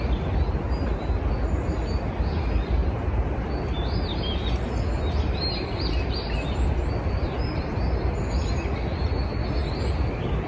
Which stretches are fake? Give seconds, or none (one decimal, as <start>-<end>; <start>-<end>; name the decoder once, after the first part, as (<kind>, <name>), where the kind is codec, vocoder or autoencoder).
none